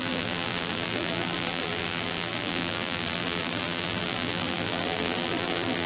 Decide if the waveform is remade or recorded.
remade